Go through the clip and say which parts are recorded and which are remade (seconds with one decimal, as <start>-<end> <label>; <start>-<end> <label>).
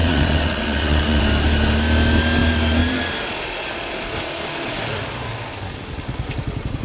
0.0-1.2 remade; 1.2-6.8 recorded